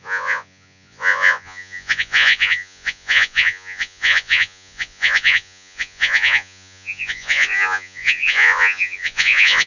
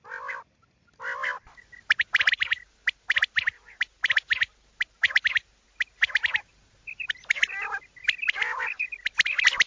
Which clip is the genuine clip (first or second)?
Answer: second